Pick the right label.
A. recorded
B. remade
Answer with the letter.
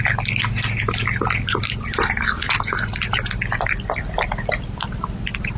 A